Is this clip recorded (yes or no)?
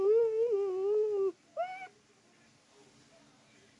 yes